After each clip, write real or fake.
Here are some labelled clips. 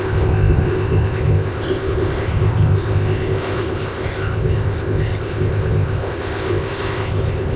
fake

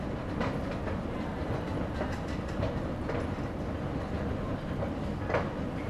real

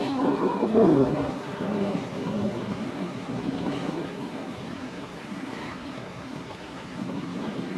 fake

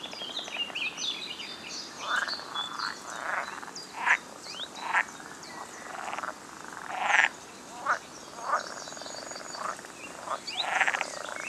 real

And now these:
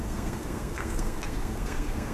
fake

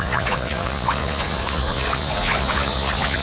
fake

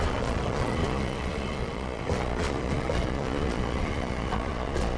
fake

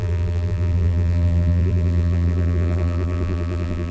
fake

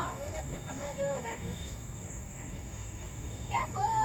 fake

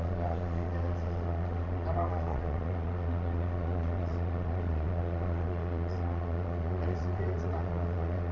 fake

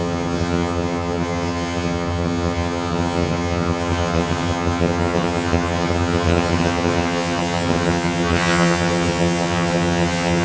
fake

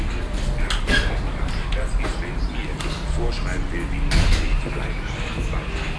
real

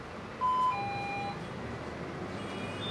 real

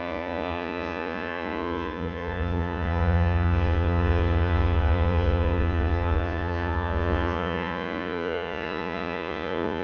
fake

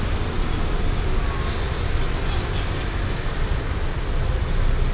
real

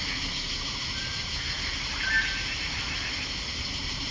real